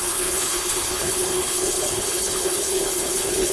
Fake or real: fake